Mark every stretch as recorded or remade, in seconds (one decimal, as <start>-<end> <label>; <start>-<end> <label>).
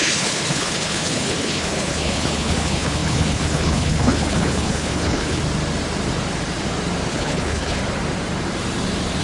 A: 0.0-5.4 remade; 5.4-7.1 recorded; 7.1-7.8 remade; 7.8-9.2 recorded